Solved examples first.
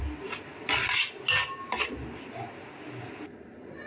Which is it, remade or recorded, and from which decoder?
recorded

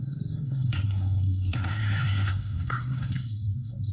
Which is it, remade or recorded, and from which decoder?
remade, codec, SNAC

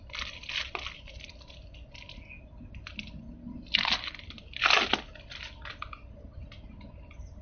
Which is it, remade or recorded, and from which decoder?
recorded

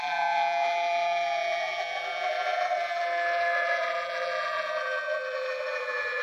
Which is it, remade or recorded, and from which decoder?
remade, vocoder, BigVGAN v2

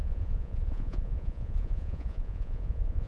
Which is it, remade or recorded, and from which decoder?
remade, vocoder, Vocos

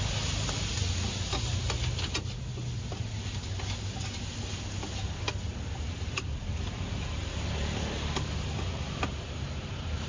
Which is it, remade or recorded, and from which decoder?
recorded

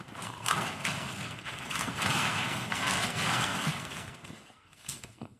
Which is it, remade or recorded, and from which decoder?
remade, codec, SNAC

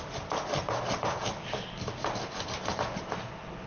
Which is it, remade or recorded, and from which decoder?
recorded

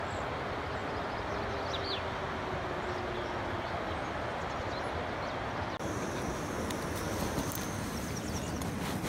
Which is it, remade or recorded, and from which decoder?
recorded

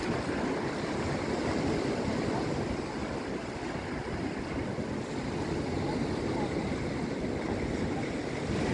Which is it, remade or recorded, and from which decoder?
recorded